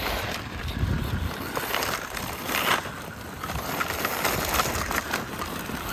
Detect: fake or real real